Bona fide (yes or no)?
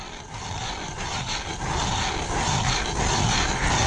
yes